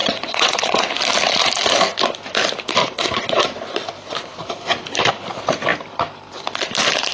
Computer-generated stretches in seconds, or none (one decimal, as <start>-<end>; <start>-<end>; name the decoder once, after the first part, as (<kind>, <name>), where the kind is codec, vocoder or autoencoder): 0.0-0.9 (vocoder, WaveNeXt); 2.8-3.6